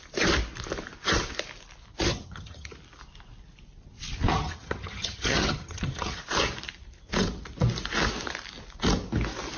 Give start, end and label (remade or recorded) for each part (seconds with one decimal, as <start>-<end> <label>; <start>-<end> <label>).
0.0-2.1 recorded; 2.1-2.7 remade; 2.7-4.3 recorded; 4.3-6.2 remade; 6.2-9.6 recorded